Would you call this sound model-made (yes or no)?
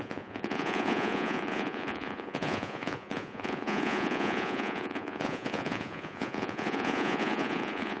yes